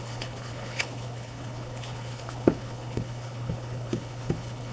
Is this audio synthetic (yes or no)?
yes